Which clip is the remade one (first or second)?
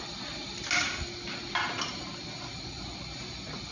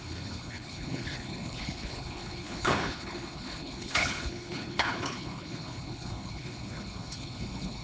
second